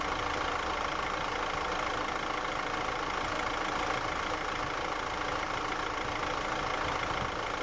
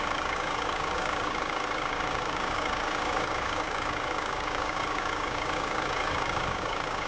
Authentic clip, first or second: first